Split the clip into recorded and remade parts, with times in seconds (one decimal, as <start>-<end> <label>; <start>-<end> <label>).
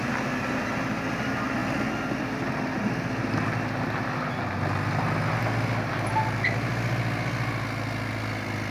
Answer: 0.0-8.7 recorded